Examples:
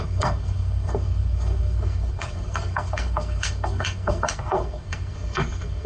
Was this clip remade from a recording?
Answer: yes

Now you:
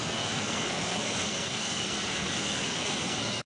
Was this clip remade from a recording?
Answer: yes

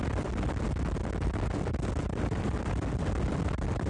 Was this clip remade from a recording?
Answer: no